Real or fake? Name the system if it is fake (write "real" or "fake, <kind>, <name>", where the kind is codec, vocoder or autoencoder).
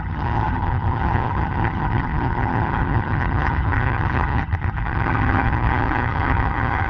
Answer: fake, vocoder, HiFi-GAN